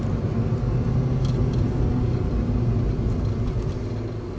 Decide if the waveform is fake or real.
real